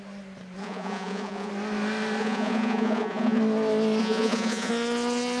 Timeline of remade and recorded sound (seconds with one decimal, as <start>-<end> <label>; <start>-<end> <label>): 0.0-0.6 recorded; 0.6-1.5 remade; 1.5-2.2 recorded; 2.2-3.4 remade; 3.4-4.0 recorded; 4.0-4.7 remade; 4.7-5.4 recorded

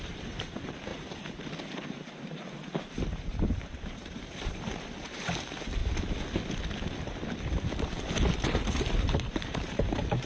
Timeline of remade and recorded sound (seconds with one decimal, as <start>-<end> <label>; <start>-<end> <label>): 0.0-5.8 remade; 5.8-8.4 recorded; 8.4-10.3 remade

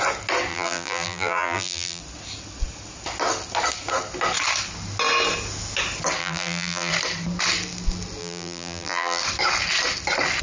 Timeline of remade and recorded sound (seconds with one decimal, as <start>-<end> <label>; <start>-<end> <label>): 0.0-0.5 recorded; 0.5-2.0 remade; 2.0-6.2 recorded; 6.2-6.9 remade; 6.9-8.2 recorded; 8.2-9.2 remade; 9.2-10.4 recorded

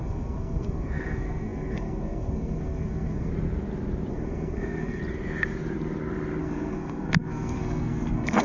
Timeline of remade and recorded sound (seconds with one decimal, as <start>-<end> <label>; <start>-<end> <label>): 0.0-3.3 remade; 3.3-4.1 recorded; 4.1-5.0 remade; 5.0-6.4 recorded; 6.4-8.4 remade